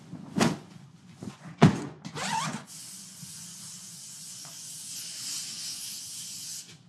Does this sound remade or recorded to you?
remade